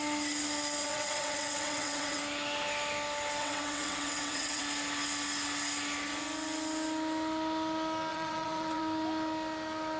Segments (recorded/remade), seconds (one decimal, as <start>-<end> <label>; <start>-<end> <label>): 0.0-0.8 recorded; 0.8-2.2 remade; 2.2-3.4 recorded; 3.4-4.6 remade; 4.6-8.1 recorded; 8.1-8.8 remade; 8.8-10.0 recorded